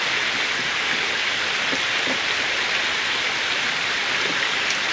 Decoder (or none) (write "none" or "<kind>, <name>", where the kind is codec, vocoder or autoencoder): none